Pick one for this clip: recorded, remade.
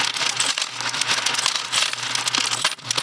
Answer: recorded